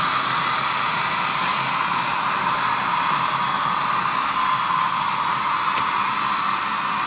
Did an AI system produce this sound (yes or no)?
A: no